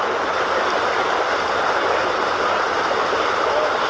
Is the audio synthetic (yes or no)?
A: no